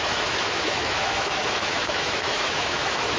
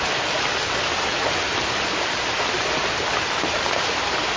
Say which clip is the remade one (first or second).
first